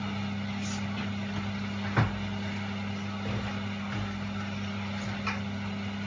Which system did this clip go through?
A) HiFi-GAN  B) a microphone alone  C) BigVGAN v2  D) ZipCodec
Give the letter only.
B